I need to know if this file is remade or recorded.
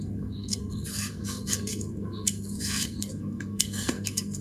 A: remade